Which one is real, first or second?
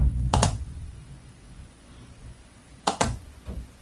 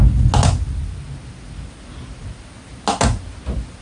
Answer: second